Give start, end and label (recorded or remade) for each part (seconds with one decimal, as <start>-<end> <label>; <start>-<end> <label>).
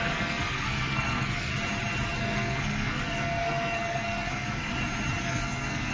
0.0-1.5 remade; 1.5-2.2 recorded; 2.2-4.7 remade; 4.7-5.2 recorded; 5.2-5.9 remade